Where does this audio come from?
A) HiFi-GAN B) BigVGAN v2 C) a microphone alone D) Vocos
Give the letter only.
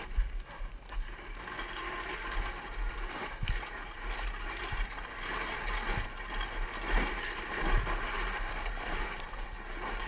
C